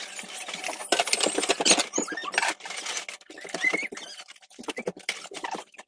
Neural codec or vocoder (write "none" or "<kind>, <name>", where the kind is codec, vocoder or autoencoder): none